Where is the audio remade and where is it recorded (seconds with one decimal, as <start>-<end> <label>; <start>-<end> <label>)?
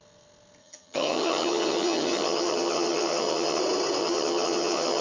0.0-0.6 recorded; 0.6-3.6 remade; 3.6-4.0 recorded; 4.0-5.0 remade